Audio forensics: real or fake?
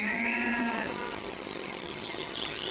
fake